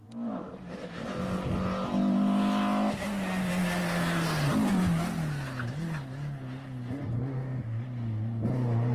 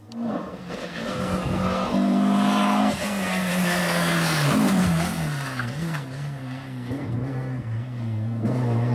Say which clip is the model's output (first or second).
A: second